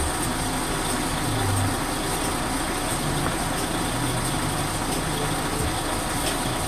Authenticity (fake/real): real